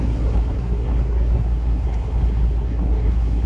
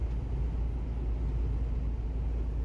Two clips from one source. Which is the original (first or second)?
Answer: second